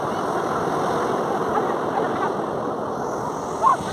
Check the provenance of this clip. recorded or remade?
recorded